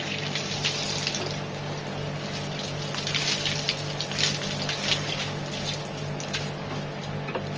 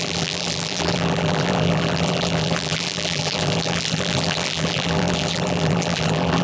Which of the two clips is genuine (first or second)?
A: first